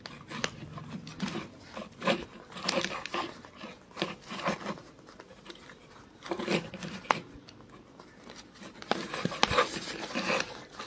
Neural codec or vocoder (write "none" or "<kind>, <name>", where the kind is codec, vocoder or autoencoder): none